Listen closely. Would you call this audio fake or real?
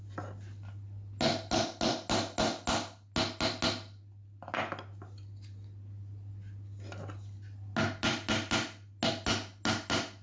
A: real